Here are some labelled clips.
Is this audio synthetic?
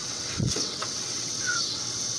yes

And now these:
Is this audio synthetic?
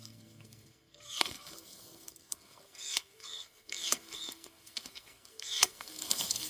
yes